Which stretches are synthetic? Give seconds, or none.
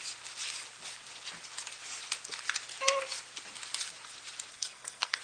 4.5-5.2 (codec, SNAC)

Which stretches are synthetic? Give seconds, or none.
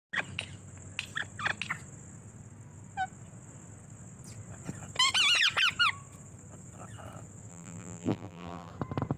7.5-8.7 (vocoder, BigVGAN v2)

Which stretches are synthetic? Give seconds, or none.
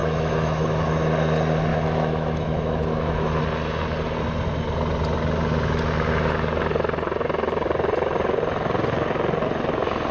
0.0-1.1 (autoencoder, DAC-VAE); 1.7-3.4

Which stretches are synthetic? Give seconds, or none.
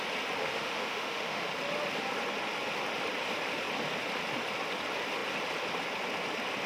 0.4-1.5 (autoencoder, DAC-VAE)